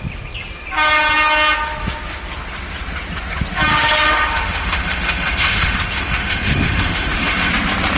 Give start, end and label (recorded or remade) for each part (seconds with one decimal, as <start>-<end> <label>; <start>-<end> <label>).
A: 0.0-3.7 recorded; 3.7-7.5 remade; 7.5-8.0 recorded